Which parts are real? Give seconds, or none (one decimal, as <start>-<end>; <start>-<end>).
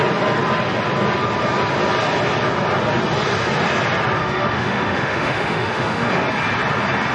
0.0-4.2; 6.1-7.1